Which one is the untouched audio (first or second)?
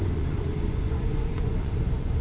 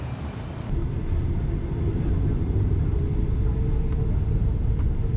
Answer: second